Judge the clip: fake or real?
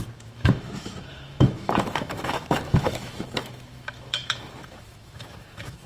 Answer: fake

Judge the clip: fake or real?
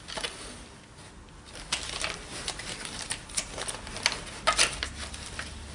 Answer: real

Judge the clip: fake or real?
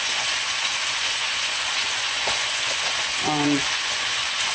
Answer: fake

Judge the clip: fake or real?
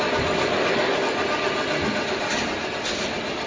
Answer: real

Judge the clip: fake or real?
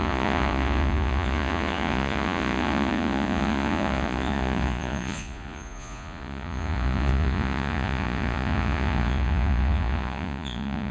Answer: fake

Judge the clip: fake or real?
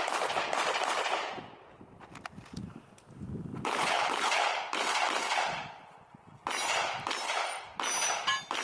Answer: real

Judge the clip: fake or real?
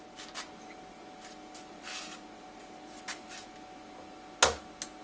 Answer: real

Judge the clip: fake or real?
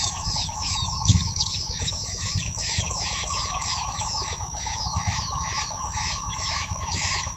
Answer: fake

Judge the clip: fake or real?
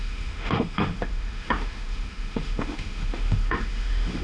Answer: fake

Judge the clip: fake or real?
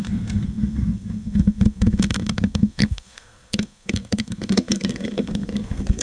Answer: fake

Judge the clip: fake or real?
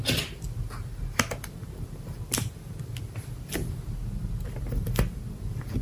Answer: real